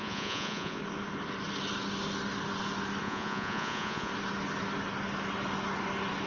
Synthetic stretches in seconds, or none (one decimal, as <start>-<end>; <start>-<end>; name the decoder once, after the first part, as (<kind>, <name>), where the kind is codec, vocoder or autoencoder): 0.0-0.8 (vocoder, Vocos); 3.0-4.1